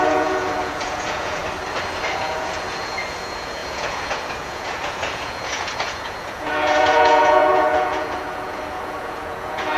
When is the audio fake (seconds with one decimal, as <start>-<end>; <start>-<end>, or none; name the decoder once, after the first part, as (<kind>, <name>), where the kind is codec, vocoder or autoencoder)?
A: 0.0-1.4 (vocoder, Vocos); 2.1-9.8